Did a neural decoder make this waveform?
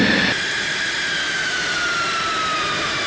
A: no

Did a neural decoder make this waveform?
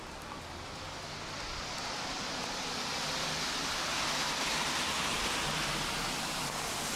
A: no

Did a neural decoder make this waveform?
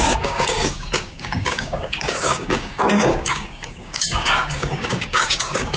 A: yes